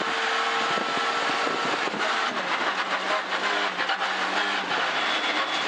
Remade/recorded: recorded